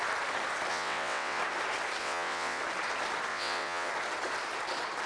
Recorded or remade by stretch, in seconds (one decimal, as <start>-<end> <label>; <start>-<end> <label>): 0.0-0.7 recorded; 0.7-1.4 remade; 1.4-2.0 recorded; 2.0-2.6 remade; 2.6-3.3 recorded; 3.3-3.9 remade; 3.9-5.1 recorded